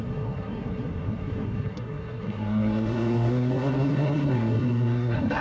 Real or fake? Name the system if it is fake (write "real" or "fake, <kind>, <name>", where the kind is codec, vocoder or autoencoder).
fake, codec, SNAC